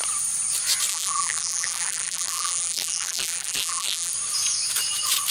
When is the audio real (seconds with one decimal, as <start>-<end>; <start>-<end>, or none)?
0.0-0.9; 4.1-5.3